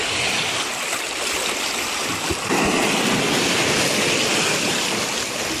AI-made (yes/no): no